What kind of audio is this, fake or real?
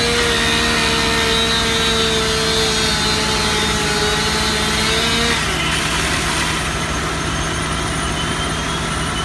real